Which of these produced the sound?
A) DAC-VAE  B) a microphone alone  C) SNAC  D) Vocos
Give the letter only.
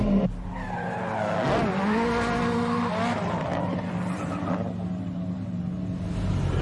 B